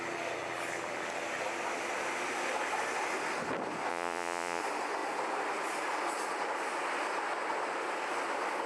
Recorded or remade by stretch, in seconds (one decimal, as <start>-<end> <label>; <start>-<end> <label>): 0.0-3.9 recorded; 3.9-4.6 remade; 4.6-8.7 recorded